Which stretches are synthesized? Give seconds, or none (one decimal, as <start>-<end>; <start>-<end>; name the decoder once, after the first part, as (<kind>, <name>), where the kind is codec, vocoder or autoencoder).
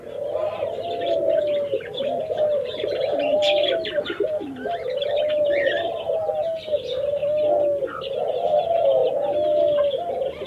3.3-5.9 (vocoder, BigVGAN v2)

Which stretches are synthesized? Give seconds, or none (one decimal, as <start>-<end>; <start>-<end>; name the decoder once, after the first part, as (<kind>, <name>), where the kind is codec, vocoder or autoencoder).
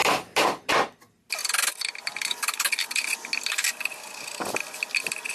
none